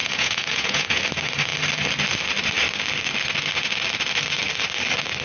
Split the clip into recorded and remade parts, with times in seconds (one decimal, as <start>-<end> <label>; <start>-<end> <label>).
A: 0.0-1.0 remade; 1.0-5.2 recorded